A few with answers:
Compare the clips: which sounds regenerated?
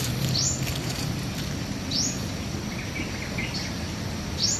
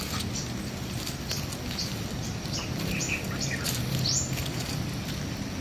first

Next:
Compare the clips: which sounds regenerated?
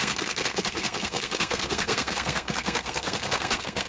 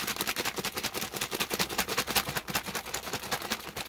first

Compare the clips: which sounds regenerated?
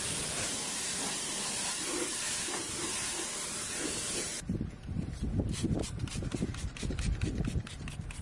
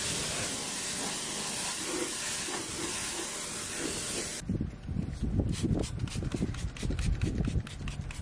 first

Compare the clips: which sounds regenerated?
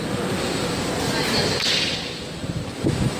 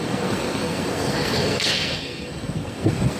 second